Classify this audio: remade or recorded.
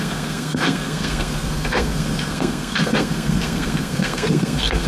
remade